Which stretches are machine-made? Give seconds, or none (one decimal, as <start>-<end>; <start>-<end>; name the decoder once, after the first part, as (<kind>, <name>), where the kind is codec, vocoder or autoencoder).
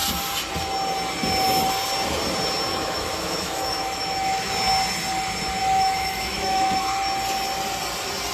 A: 2.7-4.5 (autoencoder, DAC-VAE); 5.6-6.9